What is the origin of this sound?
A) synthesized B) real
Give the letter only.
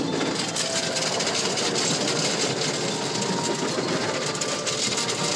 B